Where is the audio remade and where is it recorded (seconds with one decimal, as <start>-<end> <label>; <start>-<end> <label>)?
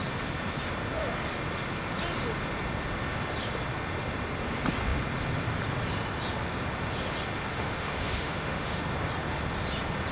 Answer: 0.0-7.5 recorded; 7.5-8.8 remade; 8.8-10.1 recorded